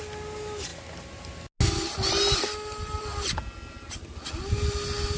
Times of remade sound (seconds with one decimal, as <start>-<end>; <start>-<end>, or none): none